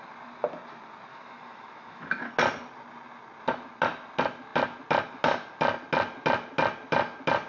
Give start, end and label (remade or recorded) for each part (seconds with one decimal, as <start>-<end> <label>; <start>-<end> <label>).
0.0-1.1 recorded; 1.1-2.3 remade; 2.3-7.5 recorded